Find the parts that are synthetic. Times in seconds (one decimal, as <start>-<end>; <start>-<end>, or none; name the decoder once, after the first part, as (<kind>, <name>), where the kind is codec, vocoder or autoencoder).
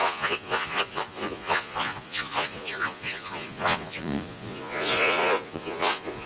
0.0-6.3 (vocoder, Vocos)